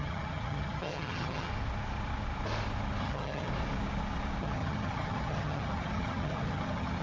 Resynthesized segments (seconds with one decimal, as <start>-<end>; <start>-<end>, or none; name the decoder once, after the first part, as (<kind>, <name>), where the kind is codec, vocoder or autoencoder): 0.0-1.5 (vocoder, HiFi-GAN); 3.0-3.5; 4.4-7.0